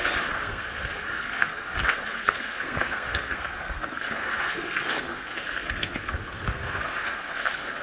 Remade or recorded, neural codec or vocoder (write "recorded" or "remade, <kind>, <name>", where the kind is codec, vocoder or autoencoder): remade, codec, SNAC